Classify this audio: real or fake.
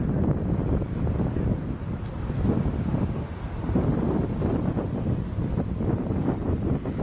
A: fake